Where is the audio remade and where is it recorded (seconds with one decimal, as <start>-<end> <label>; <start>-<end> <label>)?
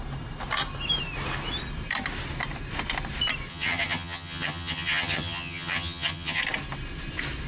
0.0-3.5 recorded; 3.5-6.4 remade; 6.4-7.5 recorded